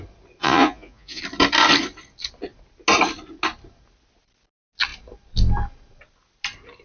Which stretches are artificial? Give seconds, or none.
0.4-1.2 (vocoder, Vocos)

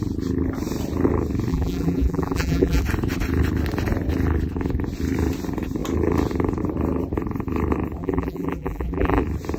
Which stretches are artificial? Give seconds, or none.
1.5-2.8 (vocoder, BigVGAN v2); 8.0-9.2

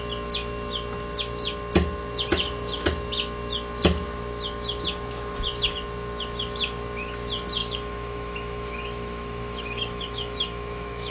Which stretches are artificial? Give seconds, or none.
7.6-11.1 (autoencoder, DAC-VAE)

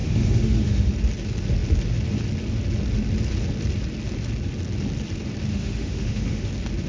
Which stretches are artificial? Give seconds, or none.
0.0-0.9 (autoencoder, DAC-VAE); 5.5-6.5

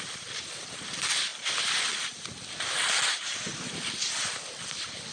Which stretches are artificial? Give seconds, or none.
none